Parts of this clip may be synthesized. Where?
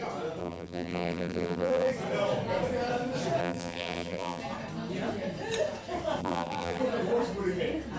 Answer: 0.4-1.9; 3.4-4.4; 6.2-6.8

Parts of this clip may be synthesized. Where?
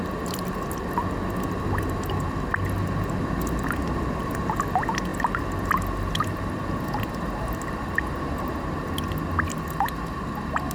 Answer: none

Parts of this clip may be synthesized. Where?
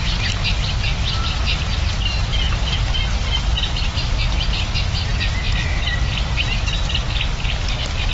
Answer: 2.3-2.9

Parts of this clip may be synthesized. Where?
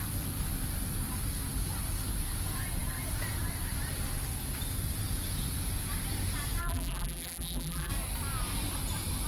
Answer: 6.6-7.9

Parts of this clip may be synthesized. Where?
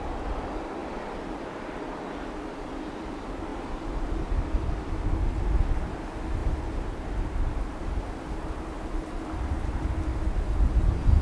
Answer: none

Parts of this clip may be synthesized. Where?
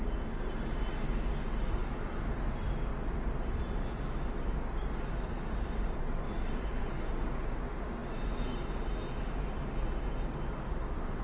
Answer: 1.8-2.5; 2.9-6.8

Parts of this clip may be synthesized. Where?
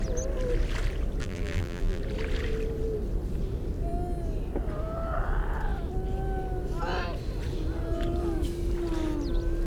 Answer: 1.2-2.0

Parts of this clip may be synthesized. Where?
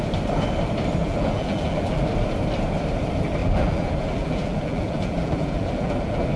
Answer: 1.0-2.1; 3.4-6.4